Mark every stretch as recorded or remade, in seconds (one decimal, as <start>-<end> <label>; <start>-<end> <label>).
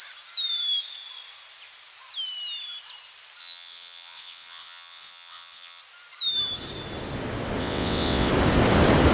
0.0-3.4 recorded; 3.4-5.8 remade; 5.8-7.6 recorded; 7.6-8.3 remade; 8.3-9.1 recorded